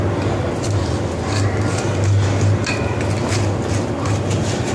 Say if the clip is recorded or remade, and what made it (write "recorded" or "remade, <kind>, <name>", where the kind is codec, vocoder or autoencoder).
recorded